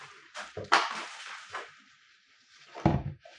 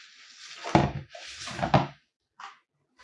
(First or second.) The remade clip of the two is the first